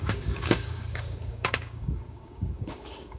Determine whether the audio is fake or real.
fake